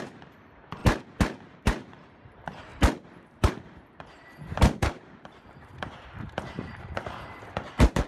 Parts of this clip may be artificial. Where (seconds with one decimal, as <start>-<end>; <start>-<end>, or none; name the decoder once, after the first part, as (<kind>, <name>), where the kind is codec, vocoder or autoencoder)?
0.0-0.8 (vocoder, BigVGAN v2); 1.6-2.7; 3.3-8.1